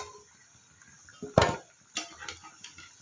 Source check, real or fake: real